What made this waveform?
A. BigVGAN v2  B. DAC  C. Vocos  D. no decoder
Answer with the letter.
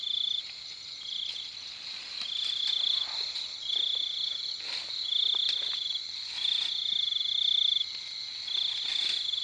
D